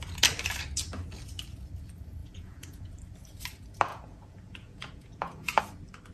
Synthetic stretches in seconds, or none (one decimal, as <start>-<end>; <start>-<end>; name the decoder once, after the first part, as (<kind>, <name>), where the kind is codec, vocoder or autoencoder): 2.2-2.9 (vocoder, Vocos); 3.9-5.6